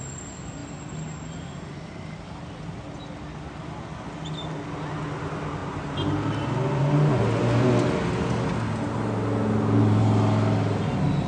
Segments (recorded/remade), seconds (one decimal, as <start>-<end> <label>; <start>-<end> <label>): 0.0-5.6 recorded; 5.6-6.5 remade; 6.5-11.3 recorded